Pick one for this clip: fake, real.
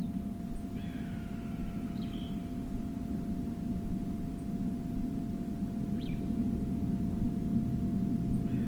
real